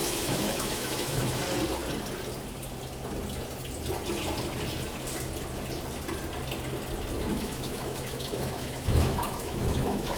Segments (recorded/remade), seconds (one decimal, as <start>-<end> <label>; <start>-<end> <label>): 0.0-1.4 remade; 1.4-7.3 recorded; 7.3-10.2 remade